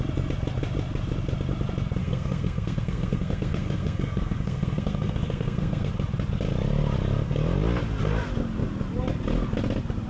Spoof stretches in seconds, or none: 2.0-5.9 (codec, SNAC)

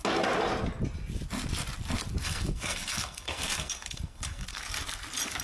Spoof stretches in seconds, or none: 2.1-4.6 (codec, SNAC)

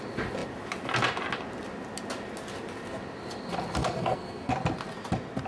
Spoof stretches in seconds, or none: 3.8-4.5 (codec, SNAC)

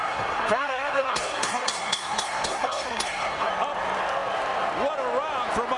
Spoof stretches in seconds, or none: 0.0-3.5 (codec, SNAC)

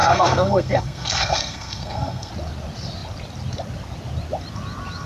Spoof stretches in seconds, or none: 0.0-2.3 (codec, SNAC)

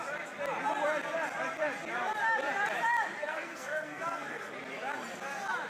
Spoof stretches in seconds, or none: 3.2-4.5 (codec, SNAC)